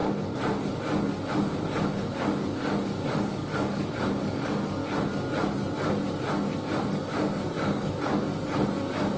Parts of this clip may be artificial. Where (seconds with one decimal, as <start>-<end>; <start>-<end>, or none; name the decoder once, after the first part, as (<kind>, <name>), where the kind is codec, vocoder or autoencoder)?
1.3-4.8 (codec, DAC); 6.8-8.3